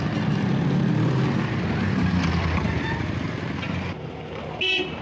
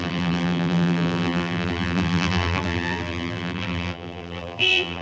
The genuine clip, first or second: first